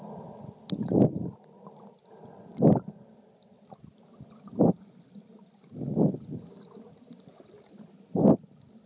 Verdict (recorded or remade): recorded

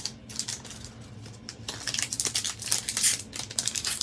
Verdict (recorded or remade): recorded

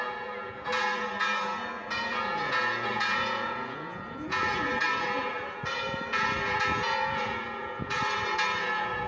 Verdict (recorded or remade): remade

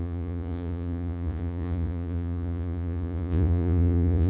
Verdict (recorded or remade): remade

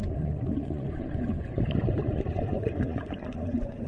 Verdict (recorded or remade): remade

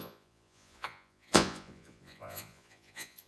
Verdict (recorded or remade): remade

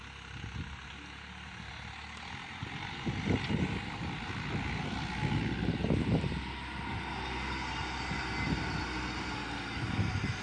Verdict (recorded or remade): recorded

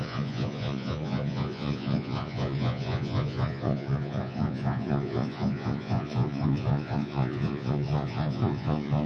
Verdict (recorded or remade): remade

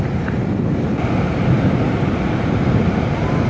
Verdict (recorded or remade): recorded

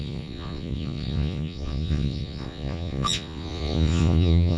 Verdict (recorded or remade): remade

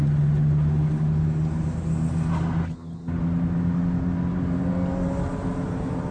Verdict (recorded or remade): recorded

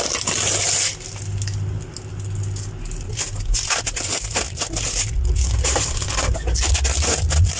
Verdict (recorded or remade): recorded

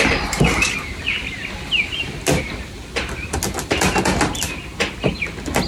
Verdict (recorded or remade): recorded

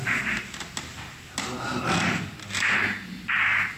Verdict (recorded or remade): recorded